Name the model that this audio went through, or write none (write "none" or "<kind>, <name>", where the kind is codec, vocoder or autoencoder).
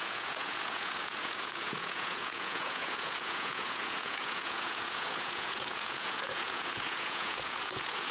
vocoder, Vocos